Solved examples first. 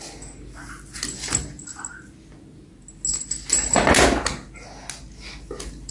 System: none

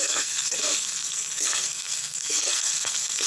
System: codec, SNAC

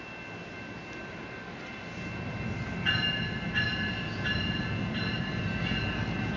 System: none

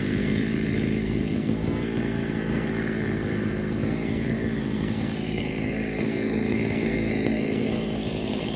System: codec, SNAC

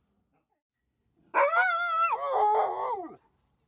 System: none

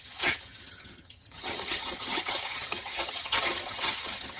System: vocoder, HiFi-GAN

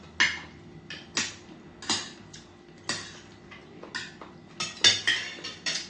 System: none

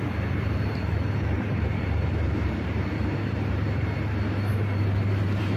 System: vocoder, BigVGAN v2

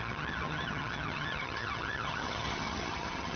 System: vocoder, HiFi-GAN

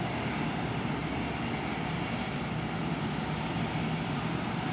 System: none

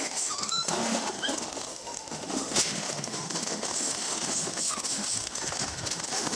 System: autoencoder, DAC-VAE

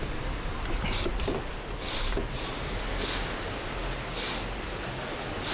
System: none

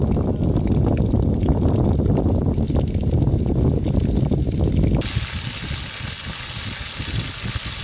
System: none